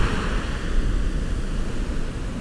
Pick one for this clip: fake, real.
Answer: real